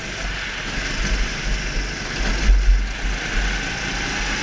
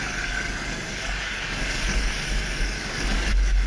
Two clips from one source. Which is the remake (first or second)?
second